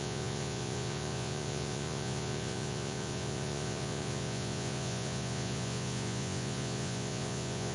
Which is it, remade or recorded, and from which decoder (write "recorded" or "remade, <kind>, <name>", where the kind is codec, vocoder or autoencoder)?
remade, vocoder, Vocos